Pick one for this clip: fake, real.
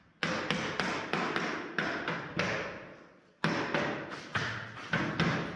real